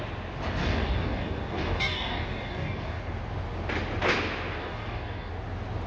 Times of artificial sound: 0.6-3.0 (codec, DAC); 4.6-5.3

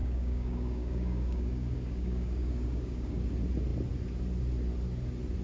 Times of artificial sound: 0.0-3.2 (codec, DAC)

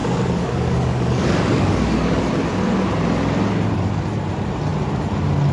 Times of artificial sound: 0.0-2.3 (codec, DAC)

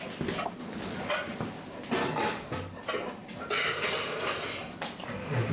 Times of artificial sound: 0.6-1.1 (codec, DAC); 2.0-2.8